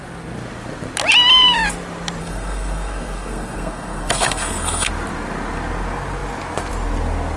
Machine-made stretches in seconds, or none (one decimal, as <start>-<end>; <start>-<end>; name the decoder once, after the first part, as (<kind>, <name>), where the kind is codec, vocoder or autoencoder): 2.2-4.9 (codec, SNAC)